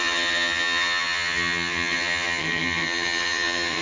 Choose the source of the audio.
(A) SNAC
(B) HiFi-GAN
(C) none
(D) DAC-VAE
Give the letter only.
B